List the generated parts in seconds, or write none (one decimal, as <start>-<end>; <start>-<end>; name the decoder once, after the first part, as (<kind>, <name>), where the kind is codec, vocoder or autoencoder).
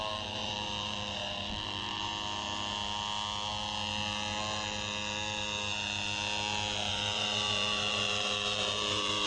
0.0-2.1 (vocoder, BigVGAN v2); 6.9-9.3